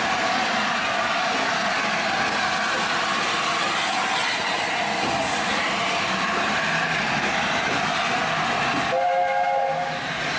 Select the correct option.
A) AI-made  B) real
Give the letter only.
B